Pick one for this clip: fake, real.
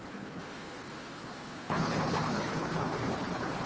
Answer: fake